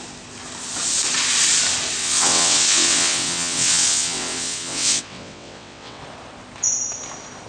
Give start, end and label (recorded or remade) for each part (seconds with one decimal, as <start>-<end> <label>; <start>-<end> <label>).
0.0-2.0 recorded; 2.0-6.0 remade; 6.0-7.5 recorded